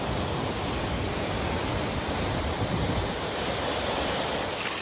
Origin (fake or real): real